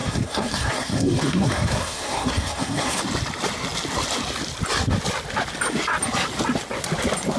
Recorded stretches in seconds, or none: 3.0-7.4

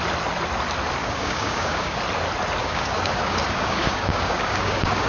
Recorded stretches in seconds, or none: 0.0-1.0; 2.0-2.6

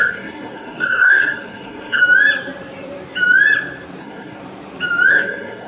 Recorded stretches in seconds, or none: 2.0-4.0; 4.4-5.1

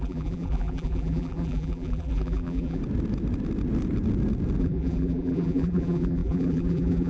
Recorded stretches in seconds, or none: 2.8-4.6

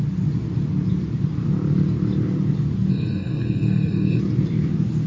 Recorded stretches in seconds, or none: 0.0-2.9; 4.2-5.1